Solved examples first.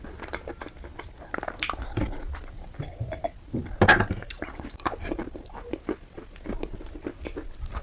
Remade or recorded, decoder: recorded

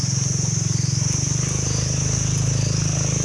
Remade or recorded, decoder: recorded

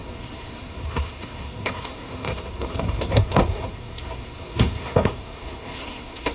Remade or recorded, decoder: remade, codec, SNAC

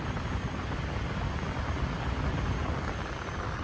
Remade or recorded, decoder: recorded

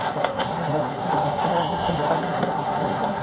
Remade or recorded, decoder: remade, codec, SNAC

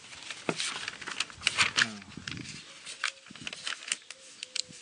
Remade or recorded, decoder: recorded